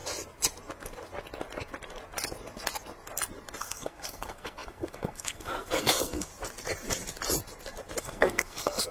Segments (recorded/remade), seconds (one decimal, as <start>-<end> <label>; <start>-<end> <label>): 0.0-3.6 recorded; 3.6-6.3 remade; 6.3-8.0 recorded; 8.0-8.9 remade

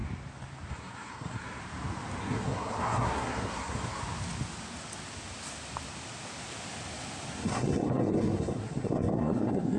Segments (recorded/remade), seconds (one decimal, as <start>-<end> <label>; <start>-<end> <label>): 0.0-0.7 recorded; 0.7-1.6 remade; 1.6-2.2 recorded; 2.2-4.0 remade; 4.0-7.3 recorded; 7.3-9.8 remade

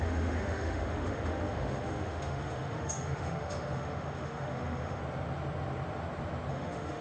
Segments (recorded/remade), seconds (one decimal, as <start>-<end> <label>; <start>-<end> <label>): 0.0-5.0 remade; 5.0-6.5 recorded; 6.5-7.0 remade

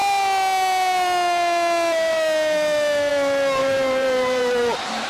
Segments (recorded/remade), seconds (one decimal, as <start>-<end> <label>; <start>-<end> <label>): 0.0-3.6 recorded; 3.6-5.1 remade